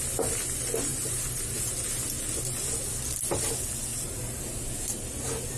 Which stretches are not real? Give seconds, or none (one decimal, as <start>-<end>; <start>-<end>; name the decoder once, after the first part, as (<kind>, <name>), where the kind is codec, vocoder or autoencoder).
0.9-1.7 (vocoder, BigVGAN v2); 3.9-4.4